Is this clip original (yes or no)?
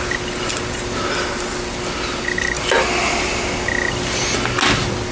yes